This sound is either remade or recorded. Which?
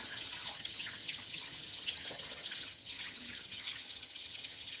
remade